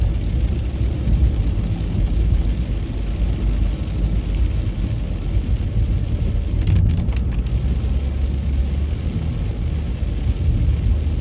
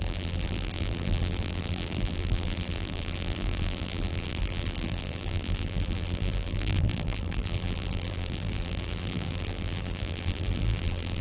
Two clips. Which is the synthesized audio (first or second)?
second